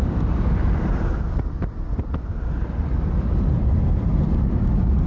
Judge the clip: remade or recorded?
remade